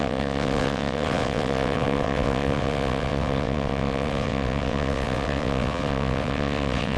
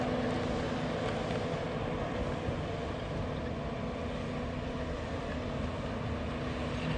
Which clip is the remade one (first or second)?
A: first